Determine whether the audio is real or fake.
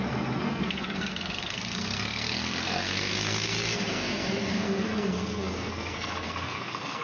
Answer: fake